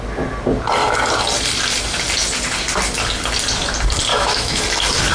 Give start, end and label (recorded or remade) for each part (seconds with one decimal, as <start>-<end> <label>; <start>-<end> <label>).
0.0-4.1 recorded; 4.1-4.6 remade; 4.6-5.1 recorded